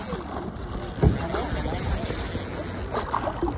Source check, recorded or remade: recorded